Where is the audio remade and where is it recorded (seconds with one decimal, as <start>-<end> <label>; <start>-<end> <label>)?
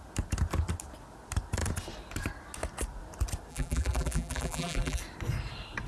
0.0-3.5 recorded; 3.5-5.0 remade; 5.0-5.9 recorded